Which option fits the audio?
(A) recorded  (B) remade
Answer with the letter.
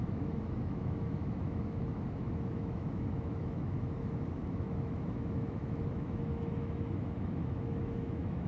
B